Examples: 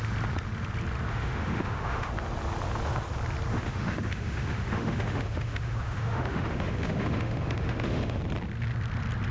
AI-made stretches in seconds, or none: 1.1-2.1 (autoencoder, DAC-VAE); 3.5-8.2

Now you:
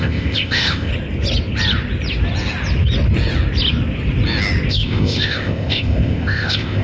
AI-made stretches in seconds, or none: 0.0-0.9 (codec, ZipCodec); 4.7-6.8

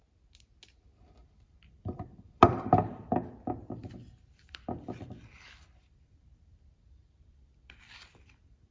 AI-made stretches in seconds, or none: 1.2-3.1 (vocoder, BigVGAN v2); 3.8-8.7

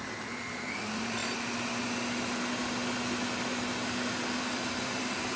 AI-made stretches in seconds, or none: 0.0-1.2 (vocoder, BigVGAN v2); 4.4-5.4

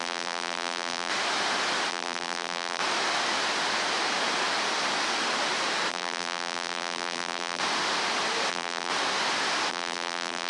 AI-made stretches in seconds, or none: 0.0-1.1 (vocoder, BigVGAN v2); 1.9-2.8; 5.9-7.6; 8.5-8.9; 9.7-10.5

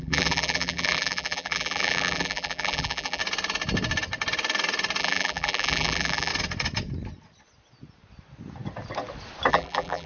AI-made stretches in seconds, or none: 0.0-3.2 (vocoder, BigVGAN v2); 5.0-6.3; 9.5-10.1

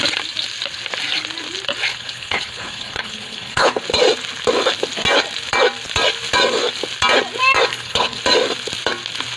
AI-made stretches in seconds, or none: 1.9-3.8 (codec, HILCodec); 7.7-8.2